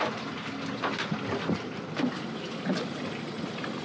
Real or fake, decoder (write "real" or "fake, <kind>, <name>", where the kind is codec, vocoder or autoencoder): real